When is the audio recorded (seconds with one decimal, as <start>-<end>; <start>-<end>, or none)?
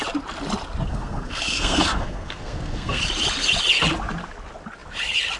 0.0-0.9; 3.0-5.4